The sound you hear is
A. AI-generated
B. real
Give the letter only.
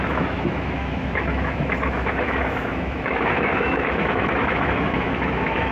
A